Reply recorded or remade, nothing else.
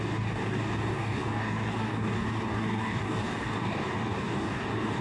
remade